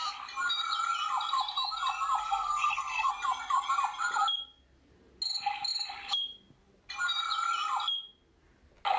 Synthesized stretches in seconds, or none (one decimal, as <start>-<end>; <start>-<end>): 2.2-3.1